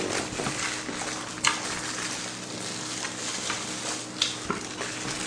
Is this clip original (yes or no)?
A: yes